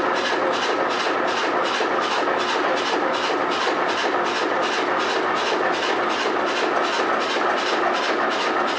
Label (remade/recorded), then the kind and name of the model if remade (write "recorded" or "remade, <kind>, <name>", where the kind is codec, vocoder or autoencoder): recorded